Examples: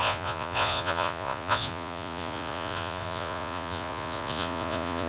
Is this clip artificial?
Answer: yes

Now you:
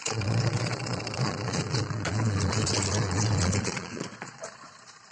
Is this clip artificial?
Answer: yes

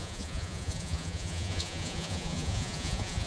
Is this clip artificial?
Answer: yes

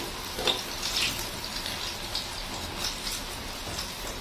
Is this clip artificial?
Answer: no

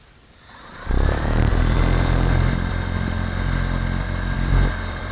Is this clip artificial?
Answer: yes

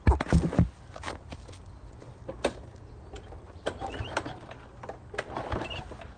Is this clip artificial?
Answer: no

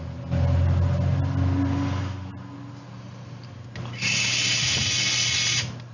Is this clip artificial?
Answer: no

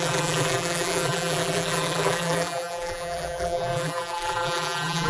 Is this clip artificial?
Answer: yes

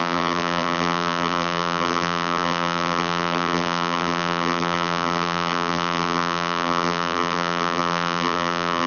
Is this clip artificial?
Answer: yes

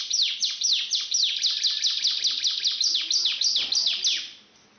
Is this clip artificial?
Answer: no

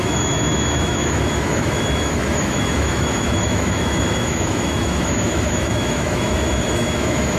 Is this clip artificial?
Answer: yes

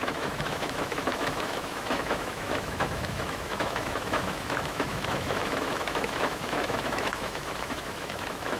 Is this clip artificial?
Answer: yes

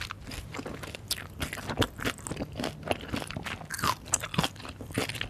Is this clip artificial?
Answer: no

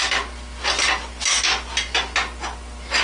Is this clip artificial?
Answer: no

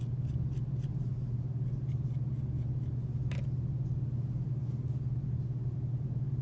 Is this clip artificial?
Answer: no